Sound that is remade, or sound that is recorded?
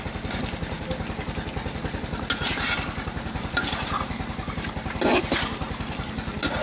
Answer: recorded